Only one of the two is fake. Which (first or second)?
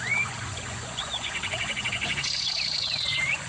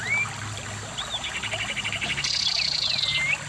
first